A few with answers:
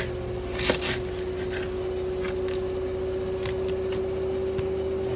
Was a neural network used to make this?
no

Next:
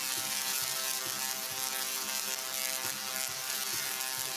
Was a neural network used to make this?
no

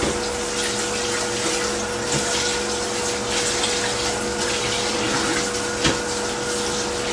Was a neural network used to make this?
no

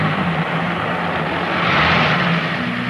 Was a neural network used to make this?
no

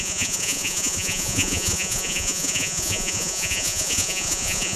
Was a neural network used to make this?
yes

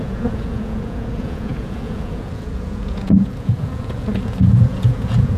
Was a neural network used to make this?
yes